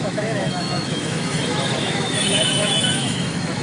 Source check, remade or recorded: remade